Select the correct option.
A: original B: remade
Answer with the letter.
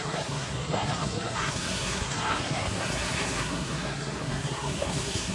B